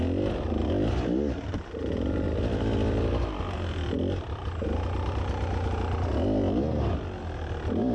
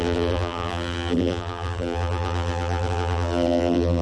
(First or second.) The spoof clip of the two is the second